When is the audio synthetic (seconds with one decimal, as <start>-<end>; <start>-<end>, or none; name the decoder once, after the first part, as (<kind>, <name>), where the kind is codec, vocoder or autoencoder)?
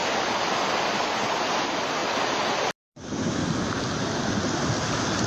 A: none